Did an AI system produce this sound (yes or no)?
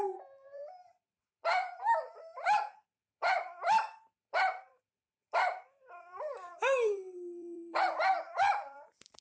yes